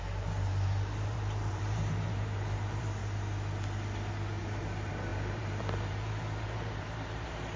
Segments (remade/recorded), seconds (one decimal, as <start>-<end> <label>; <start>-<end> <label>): 0.0-3.0 remade; 3.0-4.4 recorded; 4.4-7.6 remade